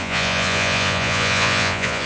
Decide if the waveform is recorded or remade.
remade